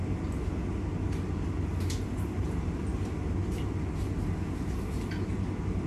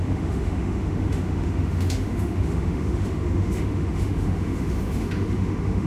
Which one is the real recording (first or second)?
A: first